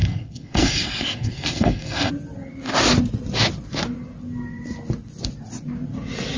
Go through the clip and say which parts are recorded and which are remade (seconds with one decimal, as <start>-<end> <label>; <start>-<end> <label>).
0.0-2.1 remade; 2.1-6.4 recorded